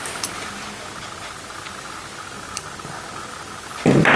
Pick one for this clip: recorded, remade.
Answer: recorded